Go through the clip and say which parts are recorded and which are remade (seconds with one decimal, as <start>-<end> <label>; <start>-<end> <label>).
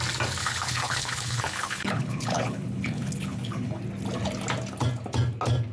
0.0-0.4 recorded; 0.4-3.8 remade; 3.8-5.7 recorded